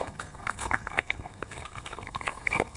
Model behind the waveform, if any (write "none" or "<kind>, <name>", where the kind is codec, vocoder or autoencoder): codec, SNAC